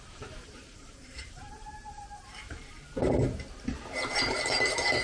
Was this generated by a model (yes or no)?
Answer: yes